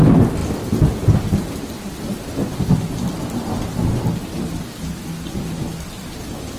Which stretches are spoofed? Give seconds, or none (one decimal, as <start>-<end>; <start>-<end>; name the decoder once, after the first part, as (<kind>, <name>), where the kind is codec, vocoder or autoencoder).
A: none